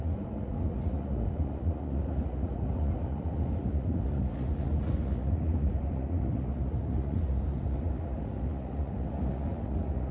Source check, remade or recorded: remade